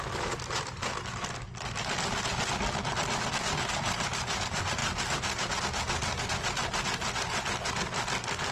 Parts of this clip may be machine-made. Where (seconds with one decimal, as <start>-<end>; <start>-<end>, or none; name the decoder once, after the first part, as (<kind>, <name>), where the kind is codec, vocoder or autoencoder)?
none